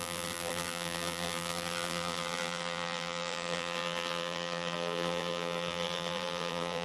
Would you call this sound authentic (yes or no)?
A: no